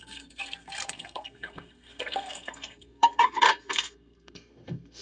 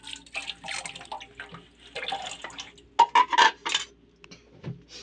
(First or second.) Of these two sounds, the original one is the second